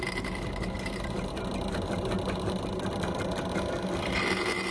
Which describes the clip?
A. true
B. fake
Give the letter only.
A